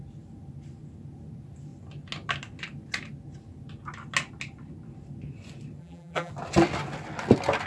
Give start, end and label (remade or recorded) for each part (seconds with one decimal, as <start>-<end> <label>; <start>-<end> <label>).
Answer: 0.0-5.8 recorded; 5.8-6.3 remade; 6.3-7.7 recorded